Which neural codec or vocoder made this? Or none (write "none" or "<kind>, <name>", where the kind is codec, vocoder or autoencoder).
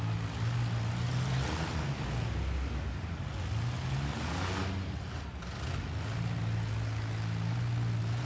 none